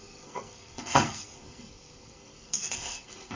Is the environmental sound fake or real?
fake